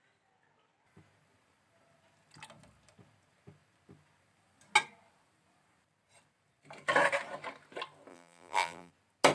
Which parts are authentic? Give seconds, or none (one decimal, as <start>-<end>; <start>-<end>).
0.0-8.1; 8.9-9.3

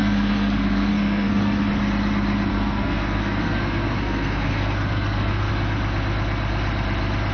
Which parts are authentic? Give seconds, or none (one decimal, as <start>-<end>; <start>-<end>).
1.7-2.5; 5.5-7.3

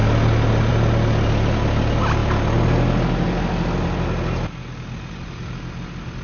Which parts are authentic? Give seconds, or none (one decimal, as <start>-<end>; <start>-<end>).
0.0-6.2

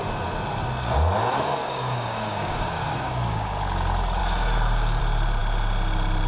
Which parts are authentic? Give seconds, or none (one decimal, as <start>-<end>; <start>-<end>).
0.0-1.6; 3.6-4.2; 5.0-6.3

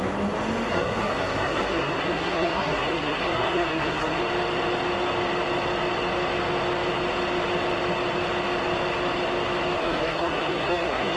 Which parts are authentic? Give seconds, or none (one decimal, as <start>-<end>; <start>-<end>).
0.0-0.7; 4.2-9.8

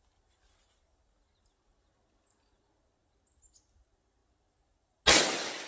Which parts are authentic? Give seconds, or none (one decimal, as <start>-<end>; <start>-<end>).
0.0-5.7